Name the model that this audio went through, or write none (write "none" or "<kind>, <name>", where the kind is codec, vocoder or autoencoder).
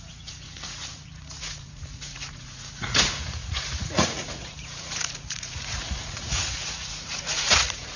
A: vocoder, Vocos